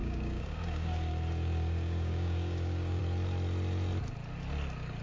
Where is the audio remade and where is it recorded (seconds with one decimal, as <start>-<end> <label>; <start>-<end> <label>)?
0.0-3.0 remade; 3.0-5.0 recorded